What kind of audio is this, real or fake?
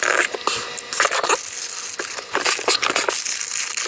real